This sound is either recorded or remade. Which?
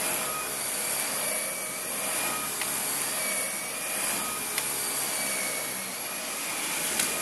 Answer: recorded